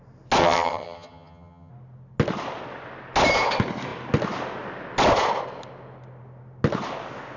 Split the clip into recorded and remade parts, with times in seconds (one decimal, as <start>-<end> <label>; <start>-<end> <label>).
0.0-0.4 recorded; 0.4-1.7 remade; 1.7-7.4 recorded